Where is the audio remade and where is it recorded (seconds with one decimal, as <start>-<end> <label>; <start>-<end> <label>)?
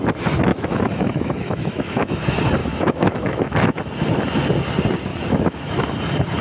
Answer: 0.0-0.5 recorded; 0.5-2.2 remade; 2.2-2.6 recorded; 2.6-3.8 remade; 3.8-5.1 recorded; 5.1-5.9 remade; 5.9-6.4 recorded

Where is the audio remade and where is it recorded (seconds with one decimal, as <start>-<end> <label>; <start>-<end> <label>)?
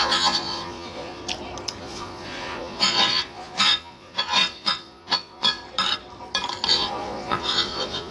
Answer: 0.0-1.2 remade; 1.2-1.8 recorded; 1.8-5.6 remade; 5.6-6.7 recorded; 6.7-8.1 remade